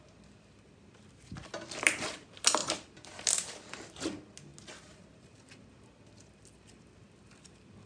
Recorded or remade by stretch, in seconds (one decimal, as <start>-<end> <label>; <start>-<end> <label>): 0.0-7.9 recorded

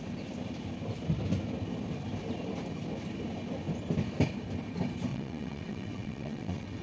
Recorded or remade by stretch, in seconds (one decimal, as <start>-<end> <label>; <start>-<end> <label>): 0.0-5.1 recorded; 5.1-6.8 remade

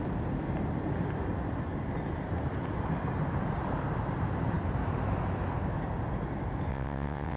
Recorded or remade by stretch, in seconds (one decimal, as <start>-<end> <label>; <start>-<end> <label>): 0.0-6.7 recorded; 6.7-7.4 remade